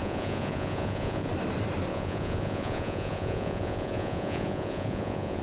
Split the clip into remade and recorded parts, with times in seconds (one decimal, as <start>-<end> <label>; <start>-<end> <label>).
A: 0.0-1.3 remade; 1.3-1.9 recorded; 1.9-5.4 remade